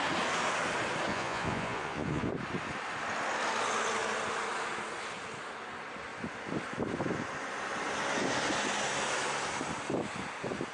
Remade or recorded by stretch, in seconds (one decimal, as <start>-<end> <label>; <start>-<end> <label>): 0.0-1.1 recorded; 1.1-2.3 remade; 2.3-10.7 recorded